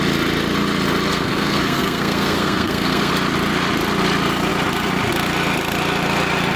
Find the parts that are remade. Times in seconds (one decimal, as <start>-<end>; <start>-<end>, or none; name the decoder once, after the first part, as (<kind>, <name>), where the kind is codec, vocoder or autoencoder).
1.1-3.1 (codec, SNAC)